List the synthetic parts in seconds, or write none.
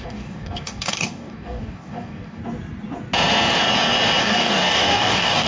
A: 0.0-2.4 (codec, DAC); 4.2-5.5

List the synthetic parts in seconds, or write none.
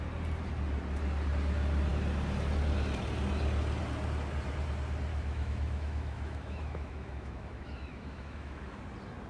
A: 5.1-8.8 (autoencoder, DAC-VAE)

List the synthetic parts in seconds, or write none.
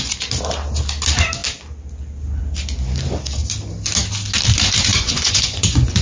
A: 4.9-6.0 (vocoder, Vocos)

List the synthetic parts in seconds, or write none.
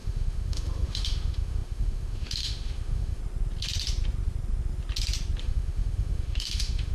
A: 0.0-3.2 (autoencoder, DAC-VAE); 5.4-6.9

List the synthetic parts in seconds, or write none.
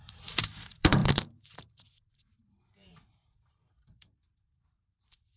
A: 0.0-5.4 (vocoder, BigVGAN v2)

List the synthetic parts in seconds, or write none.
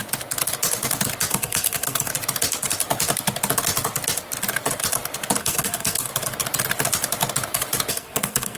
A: 1.3-2.1 (codec, SNAC); 5.4-6.1; 7.9-8.6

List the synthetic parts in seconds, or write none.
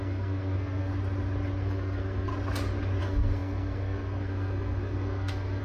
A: 0.0-0.9 (codec, SNAC); 1.6-2.3; 3.0-5.6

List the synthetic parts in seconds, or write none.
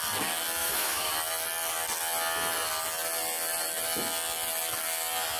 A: 0.6-1.1 (autoencoder, DAC-VAE)